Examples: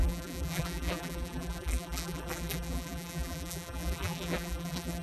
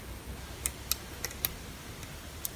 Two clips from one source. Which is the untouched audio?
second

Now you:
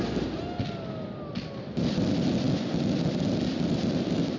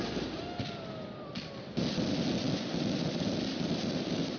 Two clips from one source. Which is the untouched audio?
first